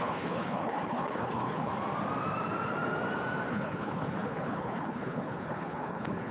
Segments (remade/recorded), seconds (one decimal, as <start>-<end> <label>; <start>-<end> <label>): 0.0-1.7 remade; 1.7-3.5 recorded; 3.5-6.3 remade